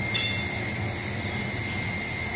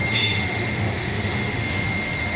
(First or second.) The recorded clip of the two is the first